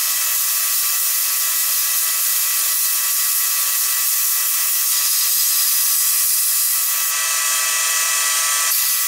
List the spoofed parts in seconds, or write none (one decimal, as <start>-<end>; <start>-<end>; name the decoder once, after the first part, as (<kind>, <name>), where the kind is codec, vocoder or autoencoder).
0.0-2.9 (vocoder, BigVGAN v2); 3.6-7.6